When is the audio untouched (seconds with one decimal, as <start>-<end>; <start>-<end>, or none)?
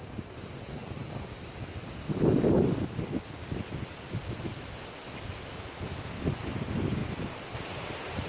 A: 0.0-8.3